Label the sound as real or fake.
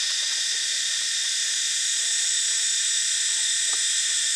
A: fake